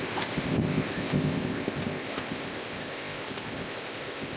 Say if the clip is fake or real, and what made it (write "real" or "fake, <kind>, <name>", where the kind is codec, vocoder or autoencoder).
fake, codec, ZipCodec